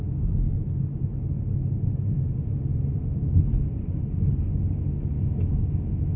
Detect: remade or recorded recorded